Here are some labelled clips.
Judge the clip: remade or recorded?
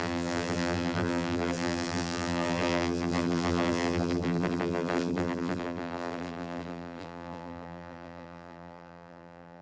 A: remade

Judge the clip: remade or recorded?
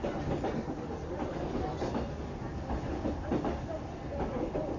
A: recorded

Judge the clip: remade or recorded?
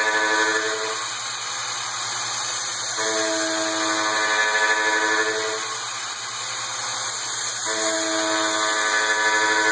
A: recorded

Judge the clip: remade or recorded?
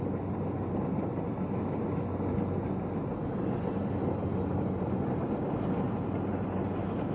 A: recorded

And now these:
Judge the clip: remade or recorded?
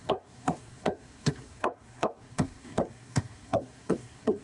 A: remade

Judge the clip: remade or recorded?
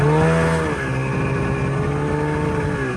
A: recorded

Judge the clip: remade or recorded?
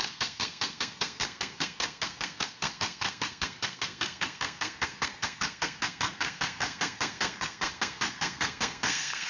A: remade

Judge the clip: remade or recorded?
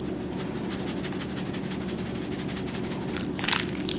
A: recorded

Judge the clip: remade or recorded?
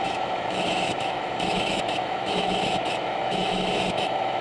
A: remade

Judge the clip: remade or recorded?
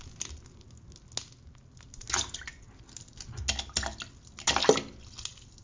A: recorded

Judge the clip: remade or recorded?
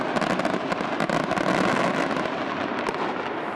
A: recorded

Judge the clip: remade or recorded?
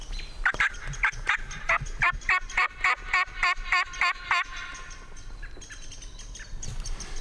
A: recorded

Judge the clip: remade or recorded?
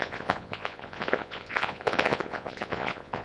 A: remade